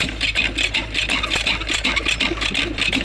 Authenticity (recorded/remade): remade